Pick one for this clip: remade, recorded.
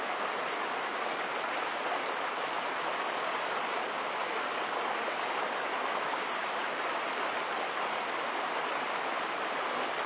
recorded